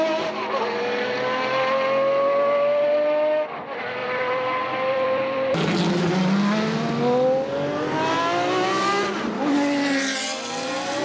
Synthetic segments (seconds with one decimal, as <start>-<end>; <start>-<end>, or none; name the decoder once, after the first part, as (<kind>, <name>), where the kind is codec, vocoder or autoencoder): 4.0-5.9 (vocoder, BigVGAN v2)

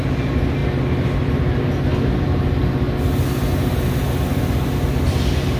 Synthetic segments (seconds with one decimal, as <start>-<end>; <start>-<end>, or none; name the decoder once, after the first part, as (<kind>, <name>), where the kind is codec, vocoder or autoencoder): none

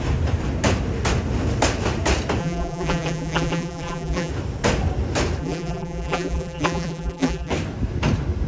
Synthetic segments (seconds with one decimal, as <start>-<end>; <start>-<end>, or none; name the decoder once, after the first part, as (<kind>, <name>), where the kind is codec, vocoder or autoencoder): 2.4-4.3 (vocoder, BigVGAN v2); 5.4-7.5

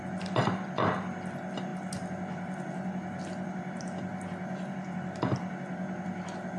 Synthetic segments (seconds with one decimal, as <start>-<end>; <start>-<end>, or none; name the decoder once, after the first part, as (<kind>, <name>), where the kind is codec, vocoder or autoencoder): none

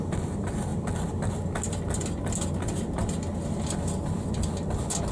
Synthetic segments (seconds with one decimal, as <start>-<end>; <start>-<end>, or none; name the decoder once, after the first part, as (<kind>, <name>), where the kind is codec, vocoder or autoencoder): none